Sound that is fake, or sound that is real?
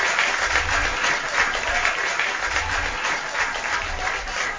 real